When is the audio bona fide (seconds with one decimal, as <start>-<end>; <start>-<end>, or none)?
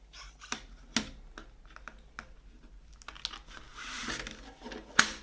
0.0-5.2